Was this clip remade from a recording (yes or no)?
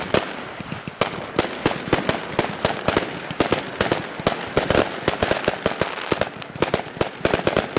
no